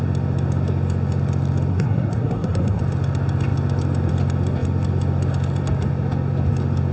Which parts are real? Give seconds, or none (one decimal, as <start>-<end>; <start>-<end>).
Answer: 0.0-1.7; 2.8-6.9